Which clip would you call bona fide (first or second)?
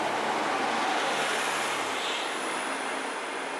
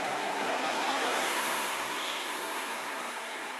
first